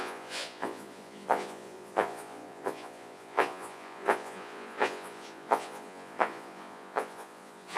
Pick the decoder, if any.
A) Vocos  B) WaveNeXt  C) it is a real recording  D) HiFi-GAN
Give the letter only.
A